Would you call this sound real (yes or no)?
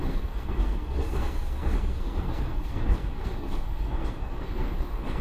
no